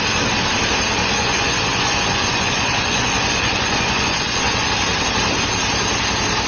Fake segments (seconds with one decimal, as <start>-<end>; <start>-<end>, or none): 1.0-4.7